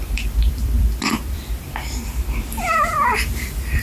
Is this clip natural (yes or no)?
no